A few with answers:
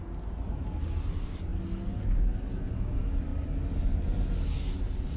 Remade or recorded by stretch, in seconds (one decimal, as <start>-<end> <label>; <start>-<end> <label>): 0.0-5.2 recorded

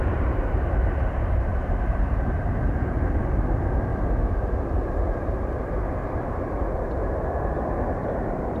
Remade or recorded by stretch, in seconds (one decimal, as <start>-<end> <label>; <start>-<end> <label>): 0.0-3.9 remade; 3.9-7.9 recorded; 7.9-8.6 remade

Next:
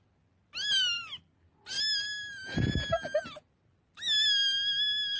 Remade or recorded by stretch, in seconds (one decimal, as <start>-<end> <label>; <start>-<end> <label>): 0.0-5.2 recorded